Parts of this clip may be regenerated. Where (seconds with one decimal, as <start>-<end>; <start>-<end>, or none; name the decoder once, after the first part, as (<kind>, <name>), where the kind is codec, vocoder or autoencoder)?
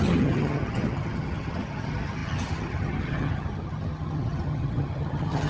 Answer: 0.0-5.5 (vocoder, HiFi-GAN)